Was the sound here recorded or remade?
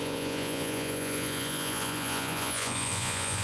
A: remade